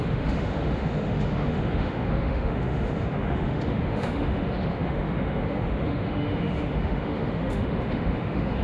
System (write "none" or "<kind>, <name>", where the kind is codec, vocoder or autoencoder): autoencoder, DAC-VAE